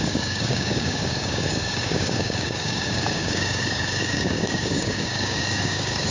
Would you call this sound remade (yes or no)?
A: yes